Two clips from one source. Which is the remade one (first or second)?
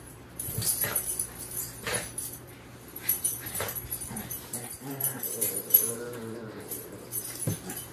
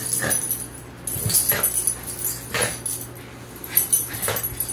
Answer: first